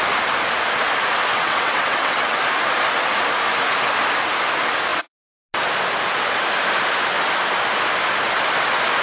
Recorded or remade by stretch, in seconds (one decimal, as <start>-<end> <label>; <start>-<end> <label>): 0.0-1.3 recorded; 1.3-2.4 remade; 2.4-9.0 recorded